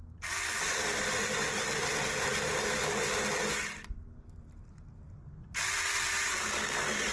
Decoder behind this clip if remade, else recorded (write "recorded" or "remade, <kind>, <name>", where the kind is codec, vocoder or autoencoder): recorded